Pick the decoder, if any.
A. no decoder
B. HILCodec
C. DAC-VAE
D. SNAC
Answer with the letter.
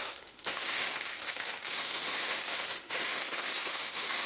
C